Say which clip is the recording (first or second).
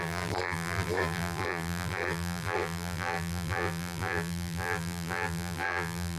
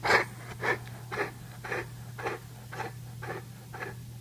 second